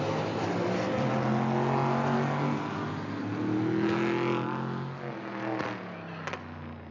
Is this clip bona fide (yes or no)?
yes